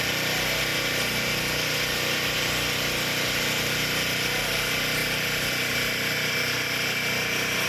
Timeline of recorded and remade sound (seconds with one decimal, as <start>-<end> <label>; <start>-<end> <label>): 0.0-7.7 recorded